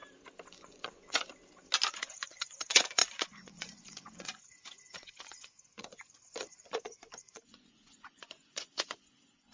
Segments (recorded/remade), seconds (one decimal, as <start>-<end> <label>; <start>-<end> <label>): 0.0-0.5 recorded; 0.5-1.3 remade; 1.3-1.9 recorded; 1.9-9.5 remade

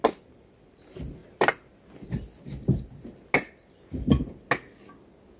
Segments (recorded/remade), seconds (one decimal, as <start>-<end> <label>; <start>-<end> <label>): 0.0-5.4 recorded

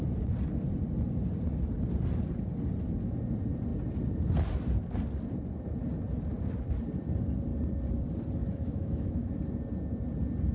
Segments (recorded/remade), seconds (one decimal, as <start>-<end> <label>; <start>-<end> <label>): 0.0-8.4 recorded; 8.4-9.3 remade; 9.3-10.5 recorded

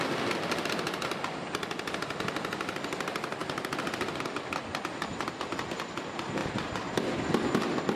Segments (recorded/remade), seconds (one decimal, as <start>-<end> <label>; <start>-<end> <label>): 0.0-8.0 recorded

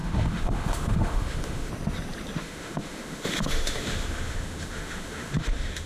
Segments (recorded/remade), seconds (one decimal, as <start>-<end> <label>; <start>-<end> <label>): 0.0-1.7 remade; 1.7-2.4 recorded; 2.4-5.9 remade